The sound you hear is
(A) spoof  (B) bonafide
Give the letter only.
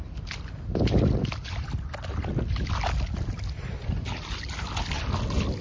B